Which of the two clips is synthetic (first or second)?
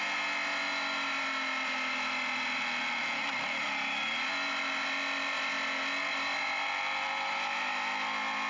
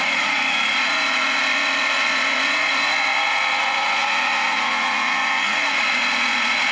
second